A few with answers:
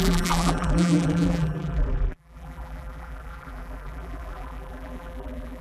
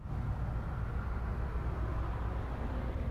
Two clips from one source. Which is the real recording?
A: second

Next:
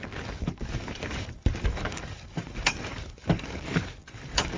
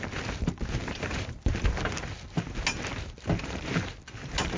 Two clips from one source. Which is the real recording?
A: second